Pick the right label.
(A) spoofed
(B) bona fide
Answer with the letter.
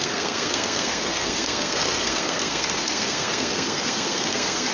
A